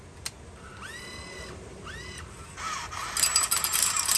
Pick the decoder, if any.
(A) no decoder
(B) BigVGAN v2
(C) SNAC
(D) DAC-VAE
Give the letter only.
A